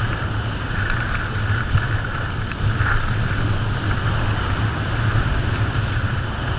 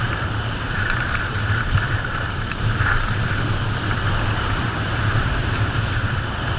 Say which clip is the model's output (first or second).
second